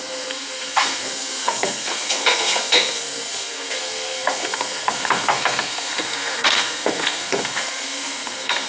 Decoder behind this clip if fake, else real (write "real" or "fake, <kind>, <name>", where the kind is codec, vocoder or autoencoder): fake, codec, SNAC